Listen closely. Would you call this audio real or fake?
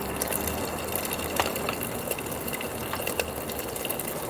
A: real